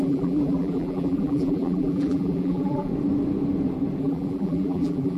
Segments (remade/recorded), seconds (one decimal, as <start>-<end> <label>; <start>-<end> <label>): 0.0-2.9 remade; 2.9-4.0 recorded; 4.0-5.2 remade